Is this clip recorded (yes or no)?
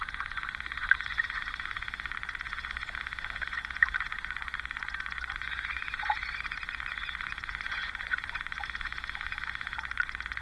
no